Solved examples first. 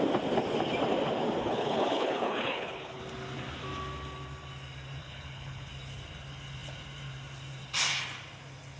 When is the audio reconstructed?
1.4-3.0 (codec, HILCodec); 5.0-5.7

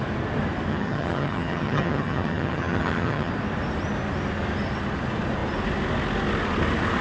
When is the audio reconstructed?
0.7-3.3 (vocoder, HiFi-GAN)

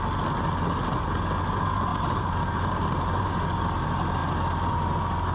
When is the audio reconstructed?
1.9-3.3 (vocoder, BigVGAN v2)

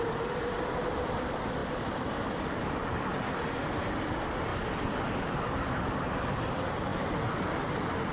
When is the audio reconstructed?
none

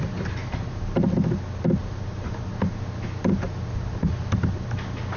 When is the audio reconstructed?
0.4-1.1 (vocoder, BigVGAN v2); 1.8-3.9

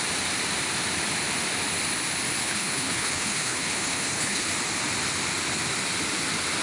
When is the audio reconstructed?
2.4-4.5 (codec, HILCodec)

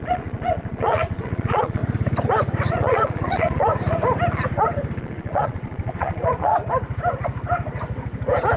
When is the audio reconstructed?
0.0-1.8 (vocoder, Vocos); 2.7-3.7; 5.0-6.5

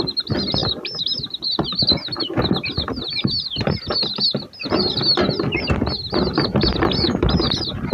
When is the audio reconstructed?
none